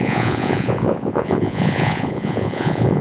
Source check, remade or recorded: remade